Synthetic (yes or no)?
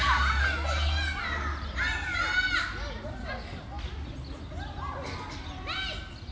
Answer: no